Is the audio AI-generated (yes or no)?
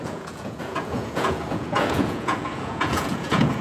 yes